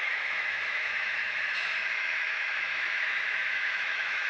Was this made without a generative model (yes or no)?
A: no